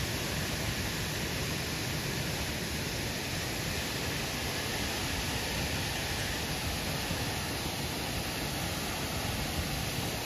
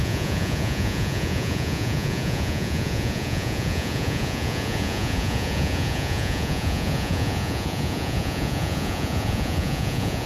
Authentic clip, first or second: first